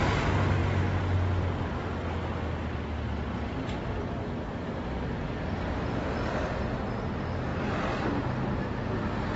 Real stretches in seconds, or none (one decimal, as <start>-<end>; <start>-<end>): 0.0-9.4